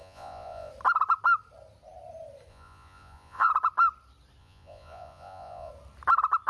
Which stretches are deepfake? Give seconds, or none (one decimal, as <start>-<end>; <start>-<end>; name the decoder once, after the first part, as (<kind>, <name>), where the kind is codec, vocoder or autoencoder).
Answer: 0.0-0.7 (vocoder, Vocos); 2.5-3.5; 4.4-5.7